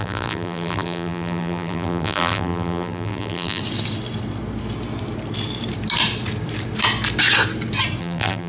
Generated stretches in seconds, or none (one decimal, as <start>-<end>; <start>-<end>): 0.0-3.6; 8.0-8.5